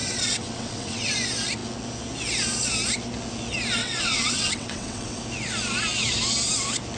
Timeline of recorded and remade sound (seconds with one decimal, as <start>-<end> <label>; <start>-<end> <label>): 0.0-1.1 remade; 1.1-3.8 recorded; 3.8-5.2 remade; 5.2-7.0 recorded